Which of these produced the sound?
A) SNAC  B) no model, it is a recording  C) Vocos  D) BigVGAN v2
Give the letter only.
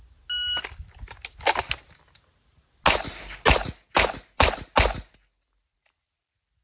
B